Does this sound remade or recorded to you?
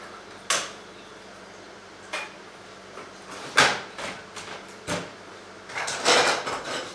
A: recorded